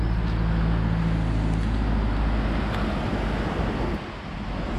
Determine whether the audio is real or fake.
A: real